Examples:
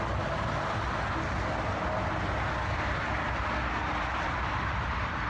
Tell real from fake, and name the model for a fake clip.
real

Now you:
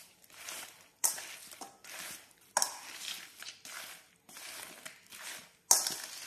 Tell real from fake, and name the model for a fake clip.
real